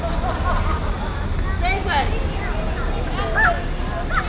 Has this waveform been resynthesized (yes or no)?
no